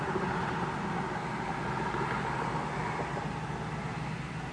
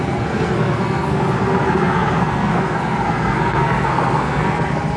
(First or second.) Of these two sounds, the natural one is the first